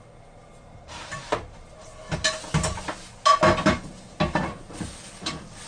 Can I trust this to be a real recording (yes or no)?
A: yes